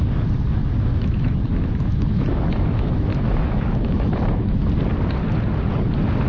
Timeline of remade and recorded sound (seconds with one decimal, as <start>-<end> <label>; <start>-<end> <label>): 0.0-0.9 recorded; 0.9-4.7 remade; 4.7-6.3 recorded